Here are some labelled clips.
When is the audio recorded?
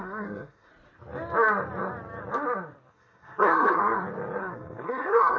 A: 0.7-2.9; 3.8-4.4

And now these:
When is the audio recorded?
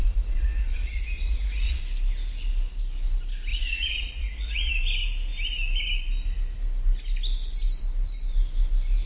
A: 1.8-3.5; 4.7-9.1